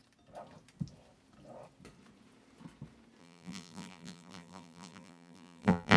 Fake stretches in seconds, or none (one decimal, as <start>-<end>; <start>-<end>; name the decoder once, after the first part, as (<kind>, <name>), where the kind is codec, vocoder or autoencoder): 3.2-6.0 (vocoder, BigVGAN v2)